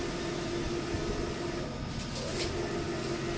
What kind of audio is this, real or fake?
real